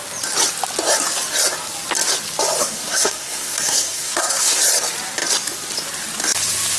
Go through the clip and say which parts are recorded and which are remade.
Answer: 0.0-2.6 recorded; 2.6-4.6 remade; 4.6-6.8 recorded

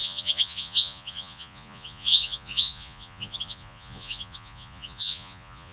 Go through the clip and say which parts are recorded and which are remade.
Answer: 0.0-5.7 remade

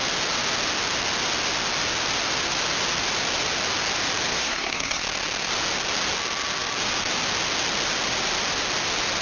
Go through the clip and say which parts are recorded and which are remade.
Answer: 0.0-4.3 recorded; 4.3-5.0 remade; 5.0-9.2 recorded

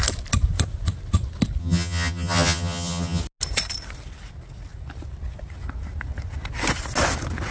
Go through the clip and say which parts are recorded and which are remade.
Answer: 0.0-1.6 recorded; 1.6-3.2 remade; 3.2-7.5 recorded

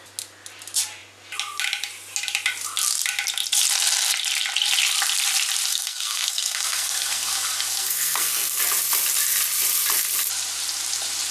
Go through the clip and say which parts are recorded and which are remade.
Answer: 0.0-5.7 recorded; 5.7-8.6 remade; 8.6-11.3 recorded